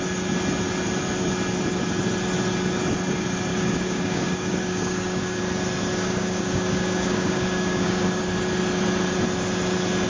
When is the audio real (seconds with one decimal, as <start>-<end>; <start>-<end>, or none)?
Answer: 0.0-3.5; 5.4-5.9; 8.2-10.1